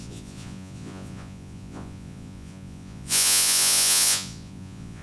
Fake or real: fake